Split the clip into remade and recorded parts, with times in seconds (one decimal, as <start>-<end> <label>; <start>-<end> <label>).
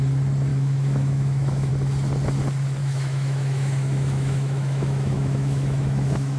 0.0-0.5 recorded; 0.5-1.7 remade; 1.7-2.8 recorded; 2.8-6.4 remade